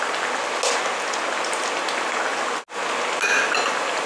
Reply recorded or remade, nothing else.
recorded